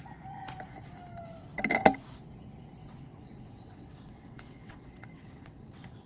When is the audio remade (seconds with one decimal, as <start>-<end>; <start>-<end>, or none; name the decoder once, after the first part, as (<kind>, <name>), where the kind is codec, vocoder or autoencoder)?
2.8-6.1 (vocoder, WaveNeXt)